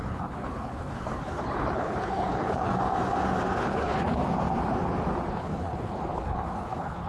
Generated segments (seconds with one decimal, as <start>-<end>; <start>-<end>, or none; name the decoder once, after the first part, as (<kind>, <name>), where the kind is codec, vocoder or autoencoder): 0.0-2.7 (codec, HILCodec); 3.6-4.2; 5.3-7.1